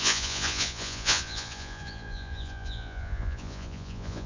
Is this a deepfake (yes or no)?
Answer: yes